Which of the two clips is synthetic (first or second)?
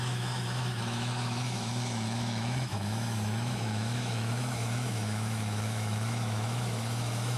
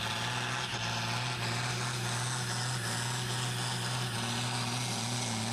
first